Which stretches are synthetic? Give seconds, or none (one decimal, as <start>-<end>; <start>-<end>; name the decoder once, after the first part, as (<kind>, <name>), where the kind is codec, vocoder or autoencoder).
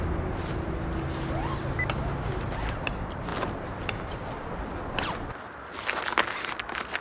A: 3.3-3.8 (vocoder, BigVGAN v2)